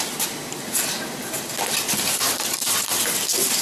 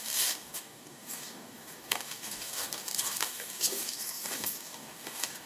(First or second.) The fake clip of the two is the second